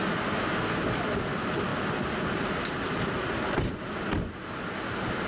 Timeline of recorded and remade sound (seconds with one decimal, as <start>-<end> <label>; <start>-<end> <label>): 0.0-5.3 recorded